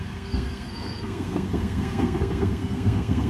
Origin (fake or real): fake